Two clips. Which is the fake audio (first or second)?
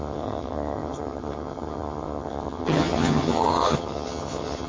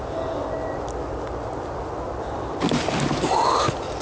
first